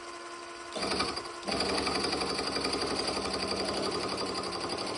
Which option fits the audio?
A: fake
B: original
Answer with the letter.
B